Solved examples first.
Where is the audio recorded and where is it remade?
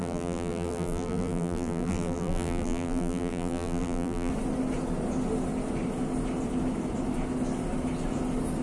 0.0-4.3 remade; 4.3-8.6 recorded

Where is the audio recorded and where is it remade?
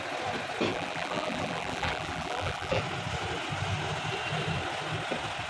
0.0-0.7 recorded; 0.7-2.8 remade; 2.8-5.5 recorded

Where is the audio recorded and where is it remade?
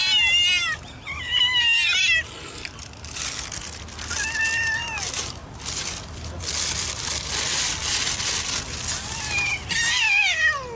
0.0-10.8 recorded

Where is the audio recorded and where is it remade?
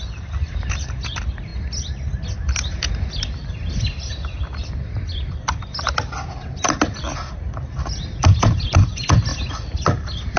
0.0-4.6 recorded; 4.6-5.9 remade; 5.9-10.4 recorded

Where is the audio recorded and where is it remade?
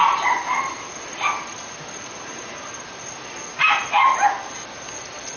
0.0-3.2 remade; 3.2-5.4 recorded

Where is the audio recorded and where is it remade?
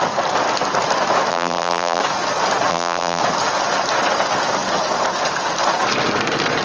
0.0-1.3 recorded; 1.3-2.0 remade; 2.0-2.7 recorded; 2.7-3.2 remade; 3.2-6.6 recorded